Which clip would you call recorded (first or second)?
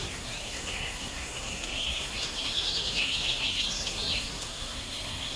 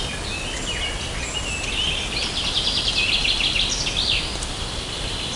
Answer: second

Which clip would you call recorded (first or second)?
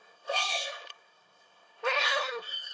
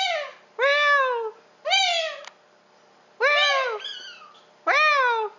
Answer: second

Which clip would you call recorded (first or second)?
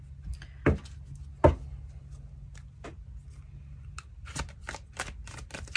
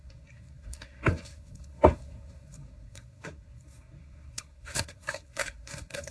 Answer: first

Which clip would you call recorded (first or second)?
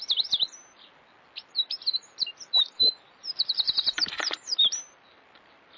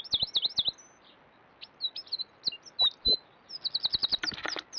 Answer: second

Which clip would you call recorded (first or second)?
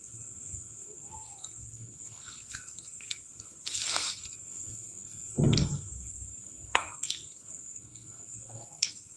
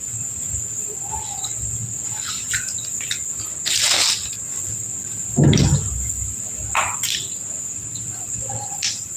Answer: second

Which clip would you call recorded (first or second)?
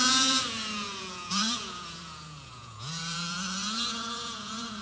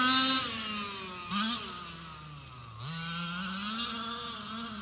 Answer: second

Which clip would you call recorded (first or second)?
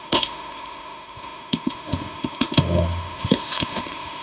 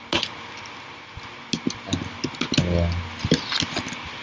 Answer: second